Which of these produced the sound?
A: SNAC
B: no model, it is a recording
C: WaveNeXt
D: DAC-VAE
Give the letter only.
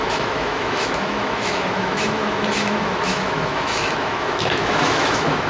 D